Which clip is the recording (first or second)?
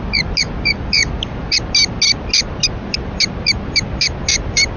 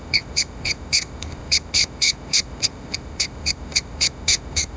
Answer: first